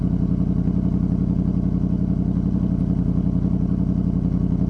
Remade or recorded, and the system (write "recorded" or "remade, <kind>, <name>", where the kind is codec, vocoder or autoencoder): recorded